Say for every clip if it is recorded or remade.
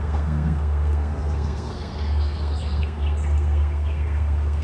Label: remade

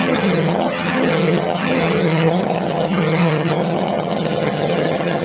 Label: remade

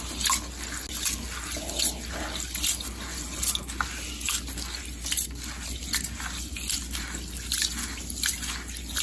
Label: recorded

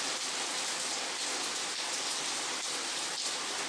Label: recorded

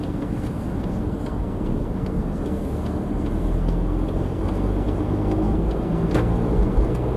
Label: remade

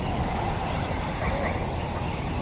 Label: recorded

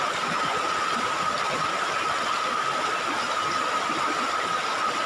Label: recorded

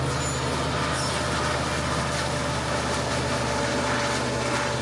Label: recorded